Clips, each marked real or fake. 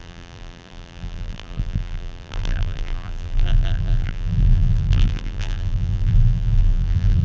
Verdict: fake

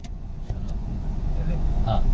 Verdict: fake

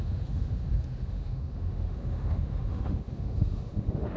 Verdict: fake